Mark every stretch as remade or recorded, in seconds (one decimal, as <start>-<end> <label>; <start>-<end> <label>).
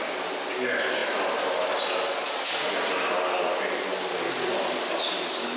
0.0-5.6 recorded